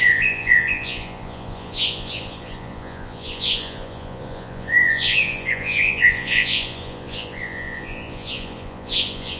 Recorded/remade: remade